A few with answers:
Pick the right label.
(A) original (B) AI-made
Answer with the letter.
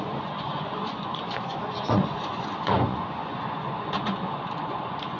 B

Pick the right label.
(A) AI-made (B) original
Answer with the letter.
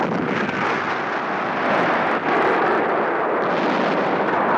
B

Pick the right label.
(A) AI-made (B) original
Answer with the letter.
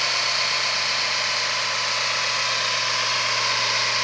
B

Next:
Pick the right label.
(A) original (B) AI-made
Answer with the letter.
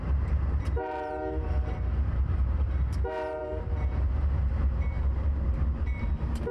B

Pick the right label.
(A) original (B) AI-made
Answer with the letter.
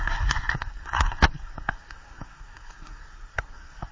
B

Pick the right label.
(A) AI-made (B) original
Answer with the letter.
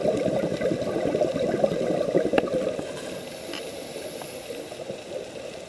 B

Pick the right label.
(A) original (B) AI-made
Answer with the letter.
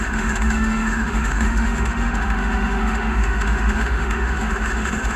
B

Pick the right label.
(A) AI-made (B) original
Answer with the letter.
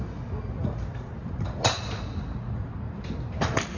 B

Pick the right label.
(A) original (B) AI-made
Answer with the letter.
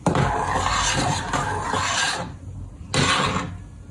A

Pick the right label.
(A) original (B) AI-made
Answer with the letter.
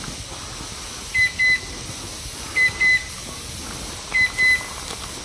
A